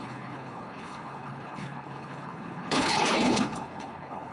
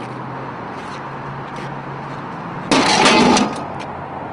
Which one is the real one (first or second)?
second